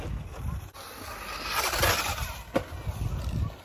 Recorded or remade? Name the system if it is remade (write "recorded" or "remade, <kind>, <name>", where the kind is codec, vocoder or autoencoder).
recorded